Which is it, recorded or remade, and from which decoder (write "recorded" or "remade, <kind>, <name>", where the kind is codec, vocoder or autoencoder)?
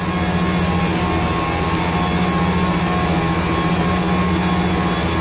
recorded